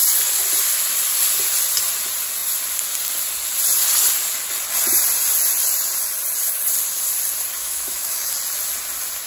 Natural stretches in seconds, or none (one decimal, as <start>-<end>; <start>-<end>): 0.0-7.6; 8.3-9.3